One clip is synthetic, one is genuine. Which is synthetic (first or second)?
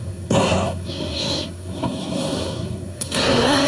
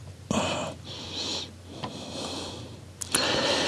first